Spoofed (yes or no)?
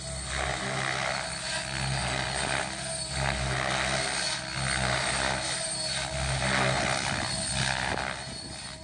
no